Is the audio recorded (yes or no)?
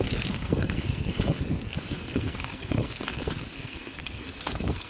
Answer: no